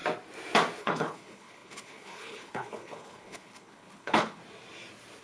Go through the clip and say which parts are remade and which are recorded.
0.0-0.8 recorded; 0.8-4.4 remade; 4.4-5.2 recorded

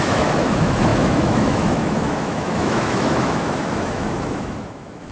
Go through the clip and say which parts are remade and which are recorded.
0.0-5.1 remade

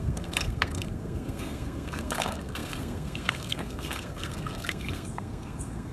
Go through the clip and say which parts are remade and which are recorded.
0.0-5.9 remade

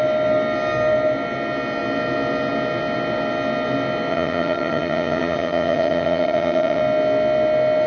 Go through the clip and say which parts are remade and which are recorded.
0.0-4.1 recorded; 4.1-6.8 remade; 6.8-7.9 recorded